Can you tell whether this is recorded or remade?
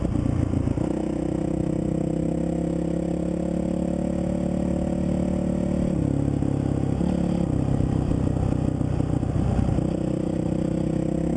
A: recorded